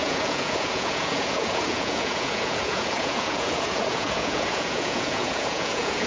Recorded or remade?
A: remade